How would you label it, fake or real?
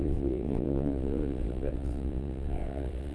fake